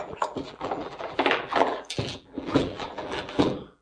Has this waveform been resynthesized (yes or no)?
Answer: yes